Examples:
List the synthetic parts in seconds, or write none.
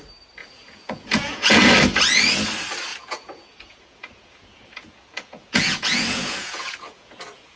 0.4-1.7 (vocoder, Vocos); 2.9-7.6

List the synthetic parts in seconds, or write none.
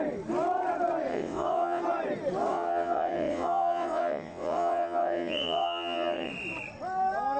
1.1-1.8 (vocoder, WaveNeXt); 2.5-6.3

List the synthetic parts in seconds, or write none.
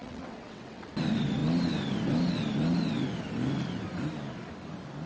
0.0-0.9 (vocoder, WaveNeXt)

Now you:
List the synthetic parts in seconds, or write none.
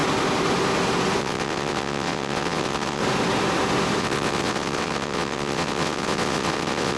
1.2-3.0 (vocoder, WaveNeXt); 4.0-7.0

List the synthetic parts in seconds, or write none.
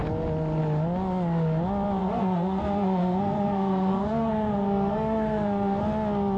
2.0-5.8 (codec, SNAC)